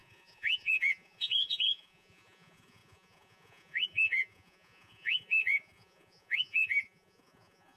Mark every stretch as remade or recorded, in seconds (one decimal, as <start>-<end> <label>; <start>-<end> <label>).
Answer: 0.0-7.8 remade